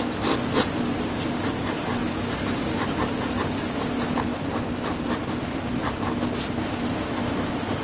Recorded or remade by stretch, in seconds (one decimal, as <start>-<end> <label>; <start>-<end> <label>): 0.0-7.8 recorded